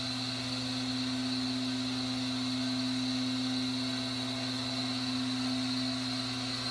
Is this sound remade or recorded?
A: recorded